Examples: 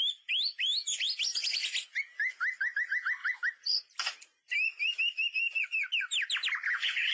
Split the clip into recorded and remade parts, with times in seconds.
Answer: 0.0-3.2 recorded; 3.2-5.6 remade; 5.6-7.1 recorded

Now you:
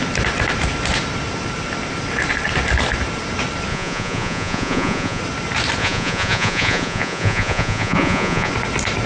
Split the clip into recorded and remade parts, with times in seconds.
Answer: 0.0-3.7 recorded; 3.7-5.2 remade; 5.2-5.8 recorded; 5.8-8.5 remade; 8.5-9.1 recorded

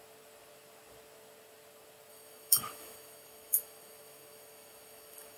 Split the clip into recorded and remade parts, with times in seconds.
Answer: 0.0-2.1 recorded; 2.1-5.4 remade

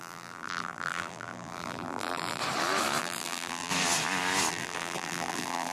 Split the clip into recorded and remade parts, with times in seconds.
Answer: 0.0-2.4 remade; 2.4-3.0 recorded; 3.0-3.7 remade; 3.7-4.5 recorded; 4.5-5.7 remade

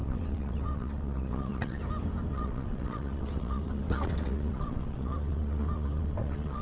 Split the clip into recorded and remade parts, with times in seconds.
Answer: 0.0-1.8 remade; 1.8-2.3 recorded; 2.3-6.6 remade

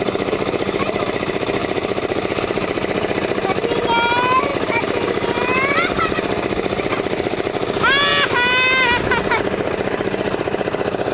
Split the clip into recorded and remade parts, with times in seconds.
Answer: 0.0-1.6 recorded; 1.6-2.4 remade; 2.4-4.5 recorded; 4.5-7.5 remade; 7.5-11.1 recorded

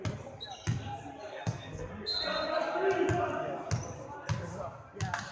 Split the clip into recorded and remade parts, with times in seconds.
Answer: 0.0-1.3 recorded; 1.3-1.9 remade; 1.9-5.3 recorded